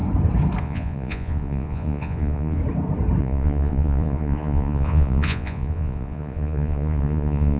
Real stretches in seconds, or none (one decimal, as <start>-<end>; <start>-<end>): 0.0-0.6; 2.6-3.2